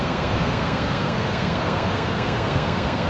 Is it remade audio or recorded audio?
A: remade